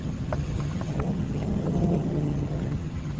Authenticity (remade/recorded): remade